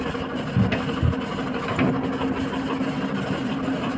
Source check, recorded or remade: recorded